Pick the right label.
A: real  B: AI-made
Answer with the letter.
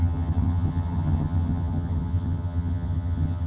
B